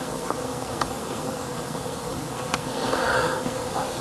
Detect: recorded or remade remade